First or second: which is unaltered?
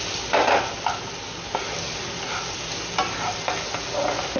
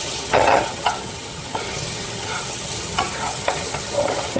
first